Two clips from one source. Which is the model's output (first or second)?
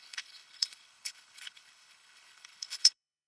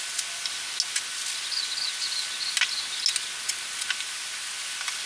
first